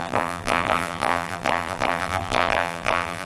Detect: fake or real fake